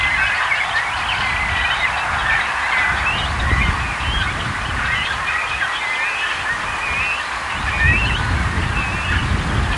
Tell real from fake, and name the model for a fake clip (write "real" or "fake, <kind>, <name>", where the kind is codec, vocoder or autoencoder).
real